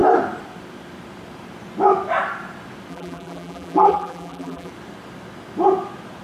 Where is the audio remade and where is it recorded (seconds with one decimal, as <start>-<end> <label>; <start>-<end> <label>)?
0.0-2.9 recorded; 2.9-4.7 remade; 4.7-6.2 recorded